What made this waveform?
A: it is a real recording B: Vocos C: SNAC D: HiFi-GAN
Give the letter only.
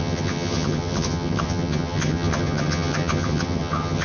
D